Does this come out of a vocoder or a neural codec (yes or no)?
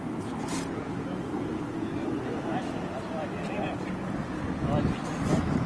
no